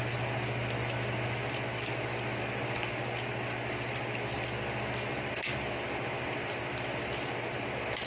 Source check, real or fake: real